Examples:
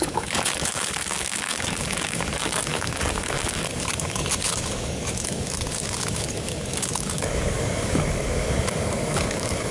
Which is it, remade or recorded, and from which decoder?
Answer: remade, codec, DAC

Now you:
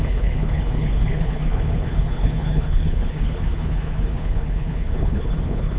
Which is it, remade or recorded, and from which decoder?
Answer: remade, codec, HILCodec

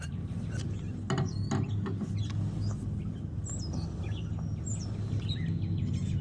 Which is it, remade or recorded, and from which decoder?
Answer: recorded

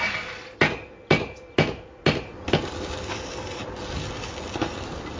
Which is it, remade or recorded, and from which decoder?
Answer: recorded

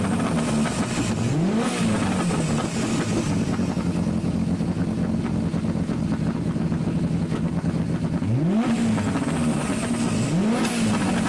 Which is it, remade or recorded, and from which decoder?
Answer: recorded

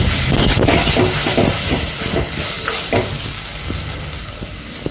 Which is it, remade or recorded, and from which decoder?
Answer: recorded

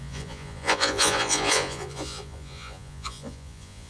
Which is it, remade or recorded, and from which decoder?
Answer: remade, vocoder, Vocos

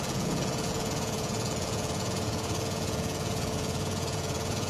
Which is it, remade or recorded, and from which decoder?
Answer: remade, vocoder, Vocos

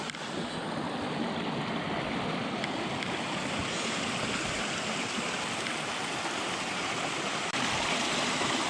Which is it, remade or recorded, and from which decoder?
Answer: recorded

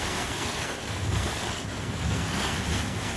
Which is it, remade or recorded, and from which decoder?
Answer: remade, codec, SNAC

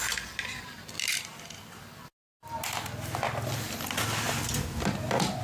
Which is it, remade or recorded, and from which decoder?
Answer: recorded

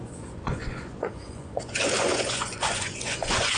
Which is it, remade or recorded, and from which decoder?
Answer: remade, vocoder, Vocos